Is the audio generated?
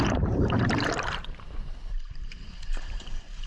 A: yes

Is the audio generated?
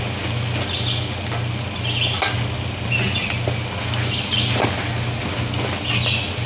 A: no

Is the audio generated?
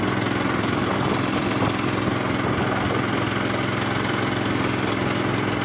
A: no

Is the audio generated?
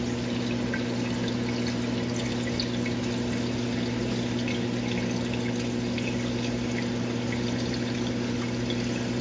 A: no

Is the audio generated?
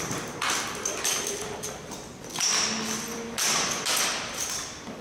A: no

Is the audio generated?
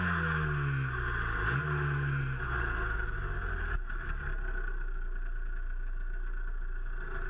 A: no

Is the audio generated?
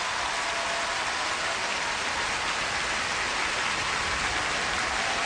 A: no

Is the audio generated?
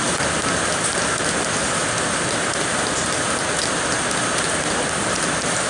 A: no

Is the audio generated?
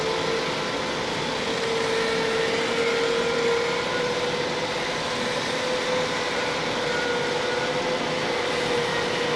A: no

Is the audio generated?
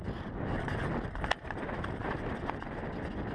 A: no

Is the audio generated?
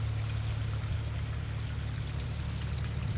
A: no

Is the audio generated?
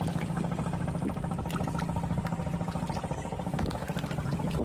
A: no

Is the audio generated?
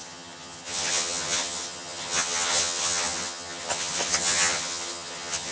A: yes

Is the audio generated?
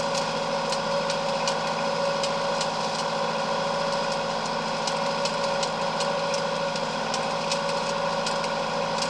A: no